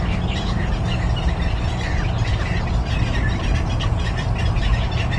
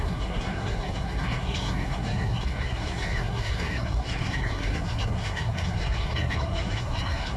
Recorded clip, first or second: first